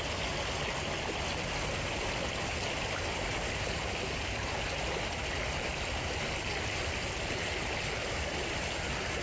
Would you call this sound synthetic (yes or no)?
no